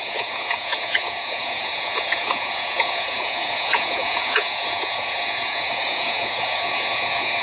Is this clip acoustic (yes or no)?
no